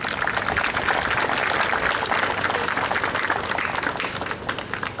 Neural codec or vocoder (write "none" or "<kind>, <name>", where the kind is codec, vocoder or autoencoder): none